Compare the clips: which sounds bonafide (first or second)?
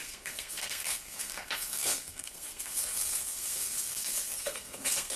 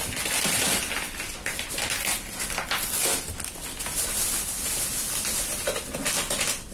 second